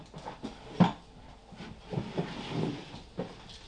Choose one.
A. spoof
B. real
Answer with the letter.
B